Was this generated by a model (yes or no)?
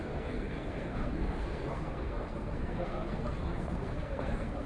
yes